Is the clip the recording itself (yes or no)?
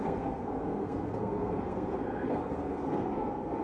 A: no